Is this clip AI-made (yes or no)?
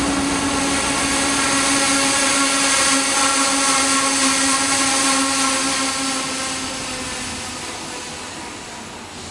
no